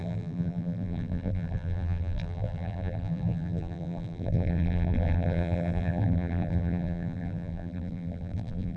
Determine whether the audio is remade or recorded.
remade